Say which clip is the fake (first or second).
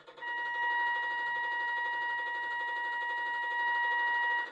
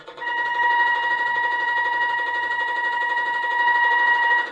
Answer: second